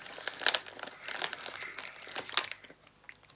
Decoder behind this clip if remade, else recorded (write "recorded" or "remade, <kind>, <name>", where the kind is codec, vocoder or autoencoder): recorded